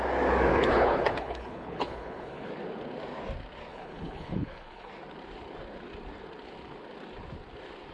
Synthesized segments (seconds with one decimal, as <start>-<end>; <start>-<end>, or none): 0.5-2.5; 3.7-4.9